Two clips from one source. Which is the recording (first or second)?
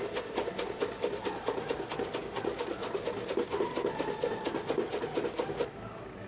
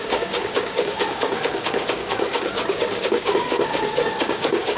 first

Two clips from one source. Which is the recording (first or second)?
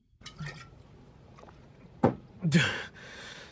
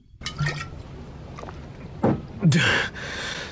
second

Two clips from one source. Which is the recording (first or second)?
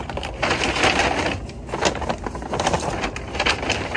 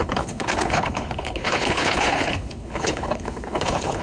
first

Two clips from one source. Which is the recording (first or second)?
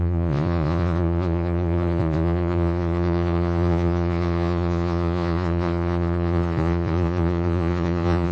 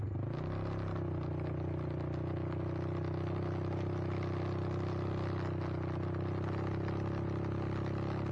second